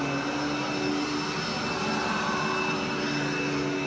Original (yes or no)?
yes